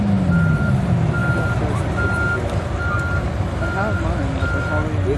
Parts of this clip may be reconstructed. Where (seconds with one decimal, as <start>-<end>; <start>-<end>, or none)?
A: none